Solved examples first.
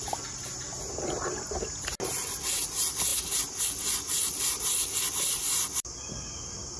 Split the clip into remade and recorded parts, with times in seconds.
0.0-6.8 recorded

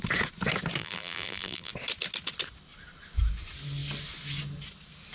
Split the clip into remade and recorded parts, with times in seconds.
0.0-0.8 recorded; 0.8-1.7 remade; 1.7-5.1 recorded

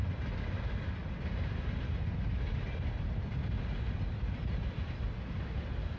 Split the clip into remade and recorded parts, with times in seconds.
0.0-6.0 recorded

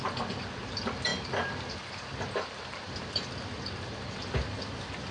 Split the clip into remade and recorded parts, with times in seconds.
0.0-1.1 recorded; 1.1-4.2 remade; 4.2-5.1 recorded

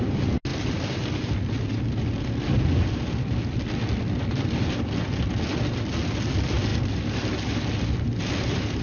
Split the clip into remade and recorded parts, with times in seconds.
0.0-8.8 recorded